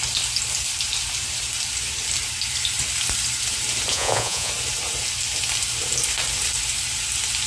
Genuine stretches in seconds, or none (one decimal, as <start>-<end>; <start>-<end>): 0.0-3.9; 4.5-7.5